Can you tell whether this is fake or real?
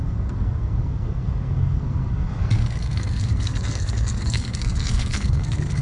fake